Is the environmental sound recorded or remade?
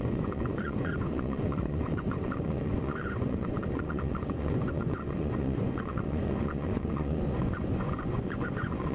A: remade